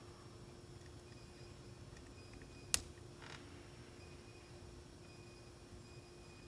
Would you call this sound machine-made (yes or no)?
no